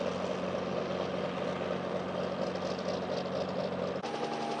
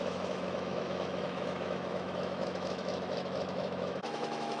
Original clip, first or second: first